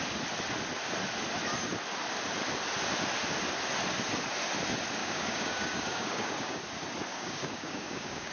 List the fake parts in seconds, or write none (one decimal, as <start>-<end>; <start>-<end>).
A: 5.0-6.6; 7.1-8.3